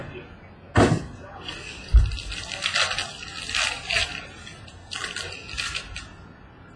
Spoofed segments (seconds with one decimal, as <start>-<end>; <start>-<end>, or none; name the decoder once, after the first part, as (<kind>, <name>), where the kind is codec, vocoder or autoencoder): none